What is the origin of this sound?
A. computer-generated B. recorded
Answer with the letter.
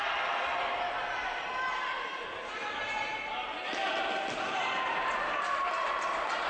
B